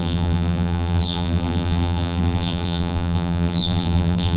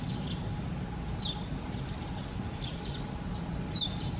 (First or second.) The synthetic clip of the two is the first